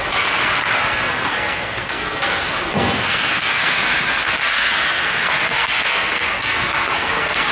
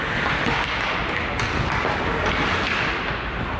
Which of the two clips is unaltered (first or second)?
second